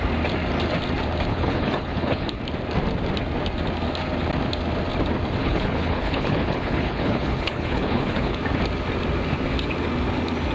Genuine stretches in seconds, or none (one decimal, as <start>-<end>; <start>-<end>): 0.0-1.3; 2.4-5.4; 8.4-10.5